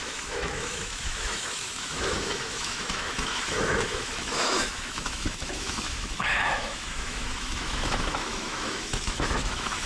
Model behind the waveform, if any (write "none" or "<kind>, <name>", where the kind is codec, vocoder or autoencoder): autoencoder, DAC-VAE